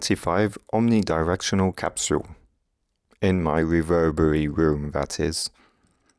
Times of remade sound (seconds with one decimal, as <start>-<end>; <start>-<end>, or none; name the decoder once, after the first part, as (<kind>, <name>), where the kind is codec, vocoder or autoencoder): 0.5-1.1 (autoencoder, DAC-VAE); 5.1-5.6